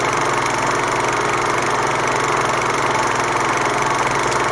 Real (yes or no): yes